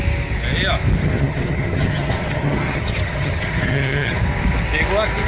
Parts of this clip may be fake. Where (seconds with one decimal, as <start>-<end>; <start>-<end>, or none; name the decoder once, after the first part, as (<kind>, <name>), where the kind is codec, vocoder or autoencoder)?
1.0-4.2 (vocoder, HiFi-GAN)